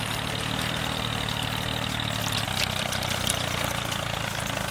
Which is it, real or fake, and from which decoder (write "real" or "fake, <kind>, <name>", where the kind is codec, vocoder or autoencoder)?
real